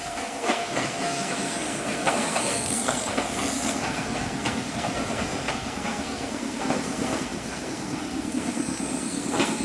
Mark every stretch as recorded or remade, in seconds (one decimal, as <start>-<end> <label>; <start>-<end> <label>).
0.0-9.6 remade